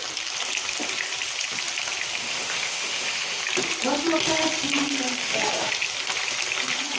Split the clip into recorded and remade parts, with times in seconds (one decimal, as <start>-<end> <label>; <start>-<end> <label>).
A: 0.0-2.2 recorded; 2.2-3.4 remade; 3.4-5.2 recorded; 5.2-5.7 remade; 5.7-7.0 recorded